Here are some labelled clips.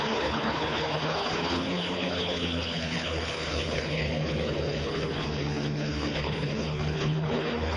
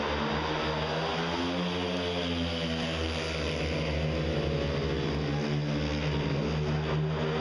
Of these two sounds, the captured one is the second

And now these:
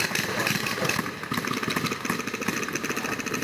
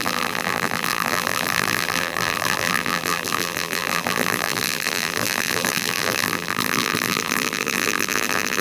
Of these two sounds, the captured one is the first